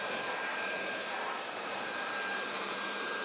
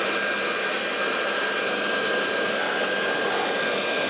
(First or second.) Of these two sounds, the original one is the second